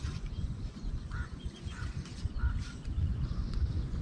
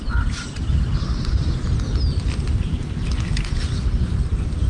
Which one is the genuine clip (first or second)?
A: second